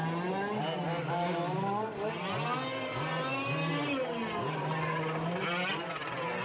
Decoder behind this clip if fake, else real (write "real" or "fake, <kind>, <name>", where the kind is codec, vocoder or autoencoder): real